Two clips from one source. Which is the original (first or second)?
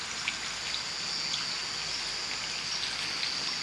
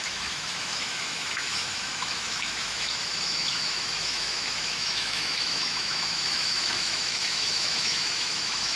first